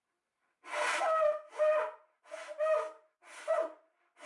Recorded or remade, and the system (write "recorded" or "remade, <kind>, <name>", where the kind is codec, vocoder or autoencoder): recorded